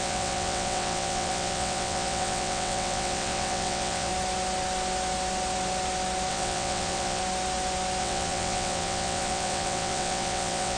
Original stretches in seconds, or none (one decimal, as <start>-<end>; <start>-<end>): 4.1-6.3; 7.2-8.0